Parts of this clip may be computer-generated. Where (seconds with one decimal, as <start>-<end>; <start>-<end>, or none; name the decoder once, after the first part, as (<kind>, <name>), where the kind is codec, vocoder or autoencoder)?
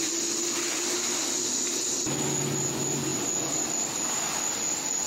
none